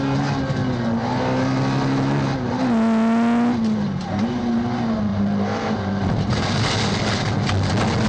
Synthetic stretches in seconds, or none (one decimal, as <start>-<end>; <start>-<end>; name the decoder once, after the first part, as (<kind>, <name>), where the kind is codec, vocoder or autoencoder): 5.1-6.7 (vocoder, BigVGAN v2)